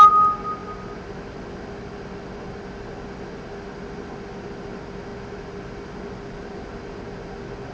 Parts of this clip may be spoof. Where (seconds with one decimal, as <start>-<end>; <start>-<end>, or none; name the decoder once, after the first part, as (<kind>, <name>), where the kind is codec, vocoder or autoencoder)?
none